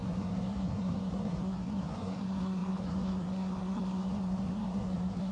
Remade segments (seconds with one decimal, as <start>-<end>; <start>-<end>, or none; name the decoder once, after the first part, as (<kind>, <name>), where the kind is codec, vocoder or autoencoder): 0.0-5.3 (codec, SNAC)